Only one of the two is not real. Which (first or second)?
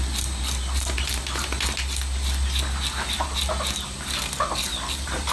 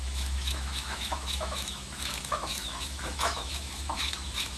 second